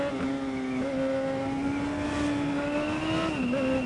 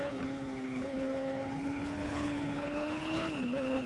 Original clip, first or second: first